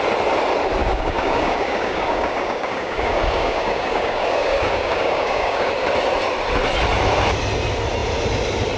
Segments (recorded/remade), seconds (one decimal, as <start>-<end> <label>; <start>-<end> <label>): 0.0-0.8 recorded; 0.8-5.7 remade; 5.7-8.8 recorded